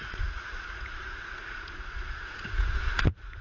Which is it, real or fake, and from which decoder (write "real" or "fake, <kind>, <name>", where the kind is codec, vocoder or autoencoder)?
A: fake, vocoder, Vocos